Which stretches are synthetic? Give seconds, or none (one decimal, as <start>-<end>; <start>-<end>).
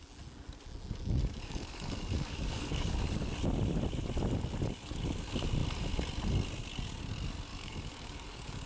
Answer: 1.2-2.9; 7.5-8.7